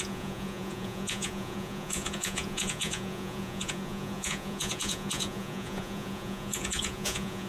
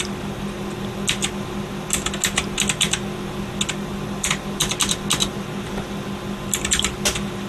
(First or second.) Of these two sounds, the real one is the second